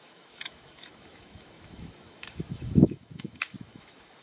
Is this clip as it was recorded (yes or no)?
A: no